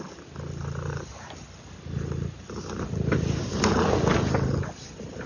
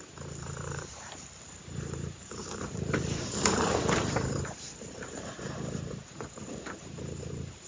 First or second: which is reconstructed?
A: second